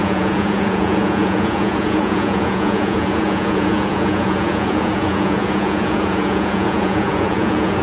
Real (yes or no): no